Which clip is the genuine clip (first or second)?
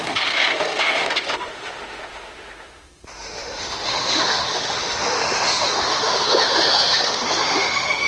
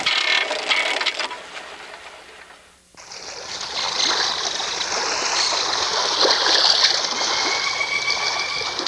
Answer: second